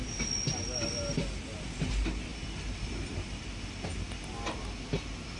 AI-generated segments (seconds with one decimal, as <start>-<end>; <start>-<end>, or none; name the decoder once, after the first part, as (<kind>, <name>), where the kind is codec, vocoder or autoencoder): none